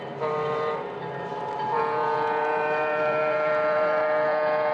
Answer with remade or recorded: remade